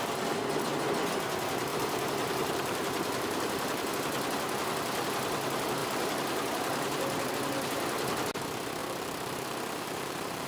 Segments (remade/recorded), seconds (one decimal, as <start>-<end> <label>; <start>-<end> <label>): 0.0-1.7 recorded; 1.7-3.9 remade; 3.9-5.8 recorded; 5.8-7.3 remade; 7.3-8.8 recorded; 8.8-10.5 remade